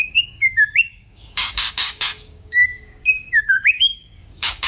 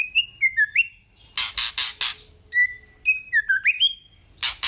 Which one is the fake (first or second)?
first